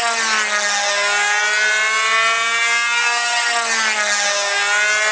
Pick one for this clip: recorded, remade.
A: recorded